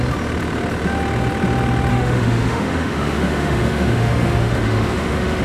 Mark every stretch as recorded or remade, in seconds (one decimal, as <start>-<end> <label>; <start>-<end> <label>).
0.0-1.9 recorded; 1.9-5.4 remade